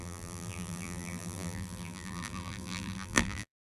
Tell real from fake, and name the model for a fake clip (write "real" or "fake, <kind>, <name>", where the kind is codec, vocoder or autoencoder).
fake, vocoder, BigVGAN v2